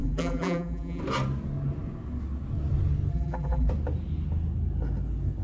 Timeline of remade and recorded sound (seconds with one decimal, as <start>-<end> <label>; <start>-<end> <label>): 0.0-1.0 remade; 1.0-3.1 recorded; 3.1-3.7 remade; 3.7-5.4 recorded